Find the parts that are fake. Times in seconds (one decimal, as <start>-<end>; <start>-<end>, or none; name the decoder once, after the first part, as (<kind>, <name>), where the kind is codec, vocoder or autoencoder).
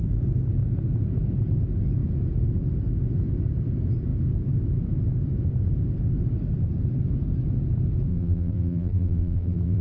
8.1-9.8 (vocoder, BigVGAN v2)